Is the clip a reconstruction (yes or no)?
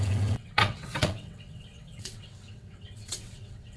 yes